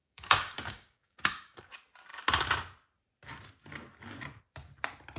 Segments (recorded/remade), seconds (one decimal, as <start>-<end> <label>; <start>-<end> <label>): 0.0-1.6 remade; 1.6-5.2 recorded